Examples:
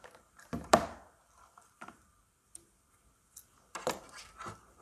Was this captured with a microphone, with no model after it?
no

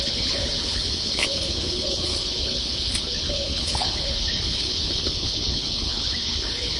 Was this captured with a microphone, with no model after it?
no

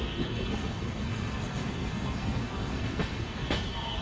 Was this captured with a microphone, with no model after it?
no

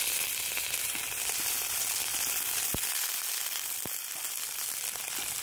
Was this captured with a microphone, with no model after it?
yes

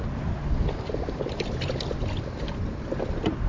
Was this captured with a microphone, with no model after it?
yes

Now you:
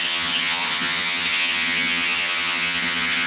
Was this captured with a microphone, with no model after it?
no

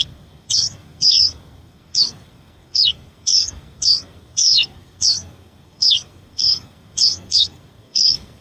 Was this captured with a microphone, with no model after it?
no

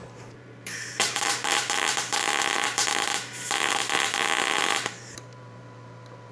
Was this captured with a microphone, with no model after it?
no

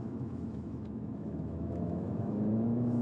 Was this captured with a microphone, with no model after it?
no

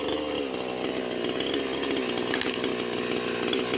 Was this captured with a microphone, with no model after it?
yes